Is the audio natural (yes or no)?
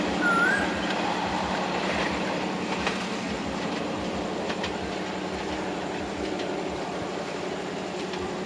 no